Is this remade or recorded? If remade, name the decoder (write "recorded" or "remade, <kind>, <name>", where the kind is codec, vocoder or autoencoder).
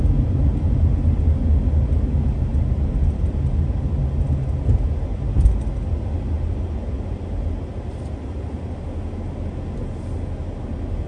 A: recorded